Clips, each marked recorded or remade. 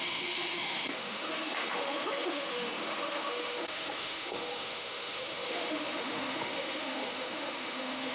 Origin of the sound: remade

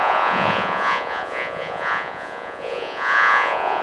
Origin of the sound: remade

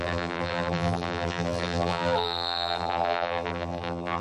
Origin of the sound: remade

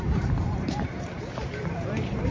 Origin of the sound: remade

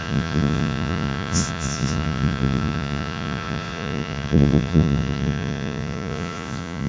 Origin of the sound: remade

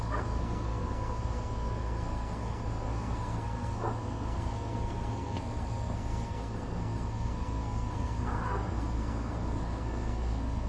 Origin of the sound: remade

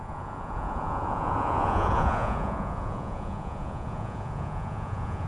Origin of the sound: remade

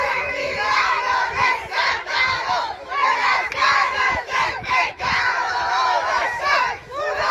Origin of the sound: remade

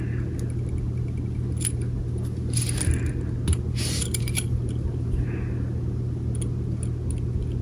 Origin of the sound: recorded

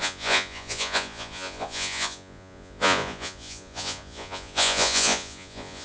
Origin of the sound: remade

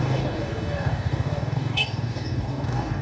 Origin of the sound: remade